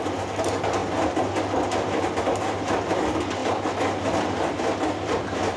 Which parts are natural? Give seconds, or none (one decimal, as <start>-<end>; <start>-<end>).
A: 0.0-5.6